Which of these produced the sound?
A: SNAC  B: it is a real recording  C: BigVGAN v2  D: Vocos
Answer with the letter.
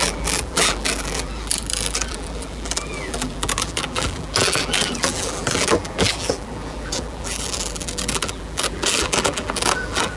C